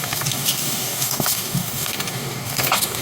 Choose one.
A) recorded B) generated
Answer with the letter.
B